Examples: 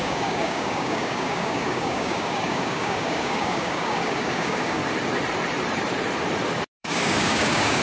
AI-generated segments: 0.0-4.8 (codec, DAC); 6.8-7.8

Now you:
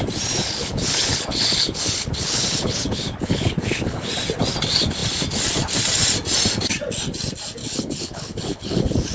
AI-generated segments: 0.4-4.1 (codec, HILCodec); 7.6-9.1

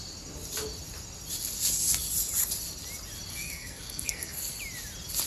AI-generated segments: 3.3-4.6 (codec, SNAC)

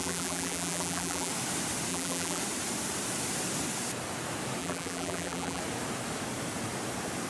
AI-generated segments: 0.0-1.3 (vocoder, BigVGAN v2); 1.9-2.4; 4.6-5.6

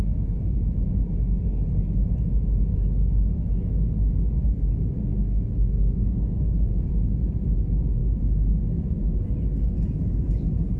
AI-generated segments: 5.0-6.9 (codec, SNAC)

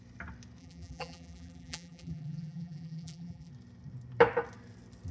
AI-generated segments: 0.6-3.5 (vocoder, BigVGAN v2)